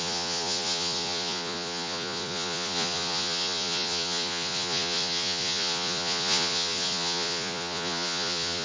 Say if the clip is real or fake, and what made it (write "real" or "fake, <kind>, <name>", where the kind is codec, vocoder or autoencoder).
fake, vocoder, Vocos